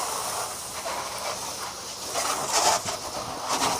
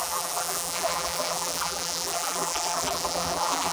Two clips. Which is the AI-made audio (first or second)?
second